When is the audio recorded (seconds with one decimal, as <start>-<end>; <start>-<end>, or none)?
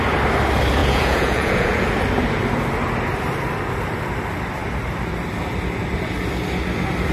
0.0-0.8; 1.9-7.1